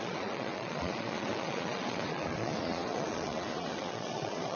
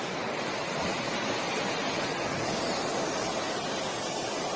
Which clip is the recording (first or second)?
second